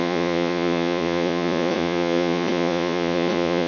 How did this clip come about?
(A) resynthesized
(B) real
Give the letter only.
A